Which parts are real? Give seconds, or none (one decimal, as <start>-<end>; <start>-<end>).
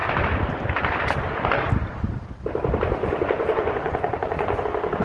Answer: 0.0-3.0; 4.6-5.0